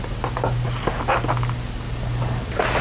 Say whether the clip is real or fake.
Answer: real